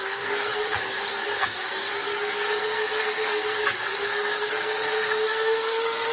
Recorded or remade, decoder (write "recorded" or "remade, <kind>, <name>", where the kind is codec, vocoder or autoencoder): remade, codec, SNAC